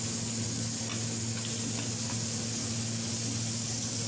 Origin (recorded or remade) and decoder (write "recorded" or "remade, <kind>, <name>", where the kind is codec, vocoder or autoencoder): recorded